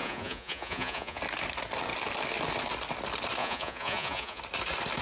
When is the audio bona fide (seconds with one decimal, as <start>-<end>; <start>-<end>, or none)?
1.2-3.4; 4.4-5.0